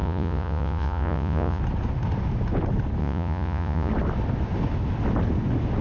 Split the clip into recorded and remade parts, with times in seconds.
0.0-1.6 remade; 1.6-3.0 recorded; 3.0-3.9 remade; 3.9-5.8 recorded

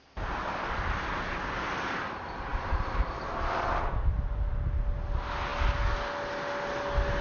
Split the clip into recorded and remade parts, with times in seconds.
0.0-7.2 recorded

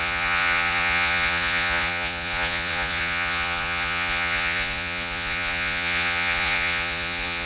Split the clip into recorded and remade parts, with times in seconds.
0.0-7.5 remade

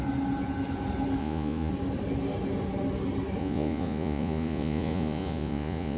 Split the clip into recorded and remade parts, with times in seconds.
0.0-1.2 recorded; 1.2-1.7 remade; 1.7-3.4 recorded; 3.4-6.0 remade

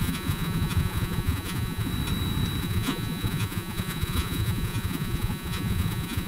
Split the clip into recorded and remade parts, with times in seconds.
0.0-1.9 remade; 1.9-2.6 recorded; 2.6-6.3 remade

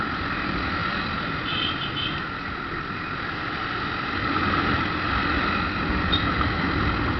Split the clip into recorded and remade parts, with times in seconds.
0.0-7.2 recorded